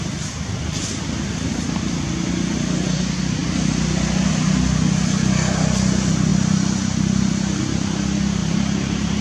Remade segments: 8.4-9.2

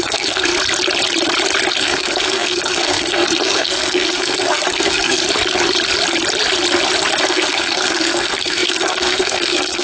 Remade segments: 0.0-0.5; 1.8-5.2; 7.2-9.8

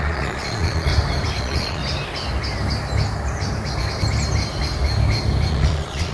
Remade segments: 0.0-0.9; 1.4-1.8; 5.5-6.1

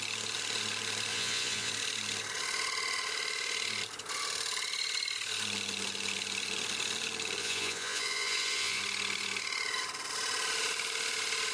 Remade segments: 1.1-1.7; 7.4-8.8

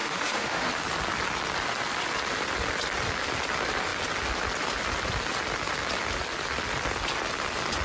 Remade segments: 0.0-0.7

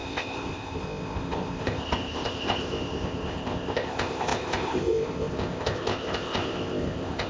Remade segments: 0.0-7.3